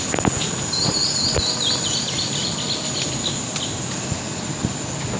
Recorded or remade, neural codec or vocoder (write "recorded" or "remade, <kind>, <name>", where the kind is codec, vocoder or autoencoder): recorded